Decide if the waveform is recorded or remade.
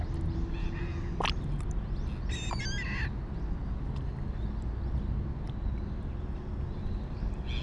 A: recorded